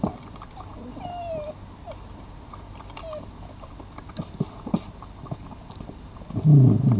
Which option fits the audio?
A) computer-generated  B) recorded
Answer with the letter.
B